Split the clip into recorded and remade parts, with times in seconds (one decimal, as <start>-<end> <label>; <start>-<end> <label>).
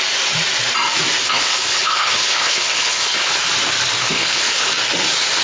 0.0-1.2 recorded; 1.2-3.4 remade; 3.4-4.0 recorded; 4.0-4.7 remade; 4.7-5.4 recorded